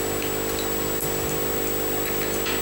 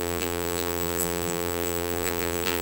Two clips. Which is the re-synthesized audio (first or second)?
second